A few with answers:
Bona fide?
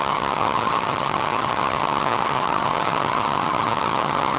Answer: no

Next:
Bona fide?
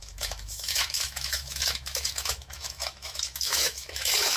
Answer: no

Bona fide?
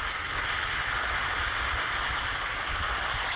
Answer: yes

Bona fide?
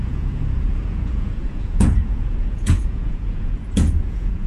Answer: no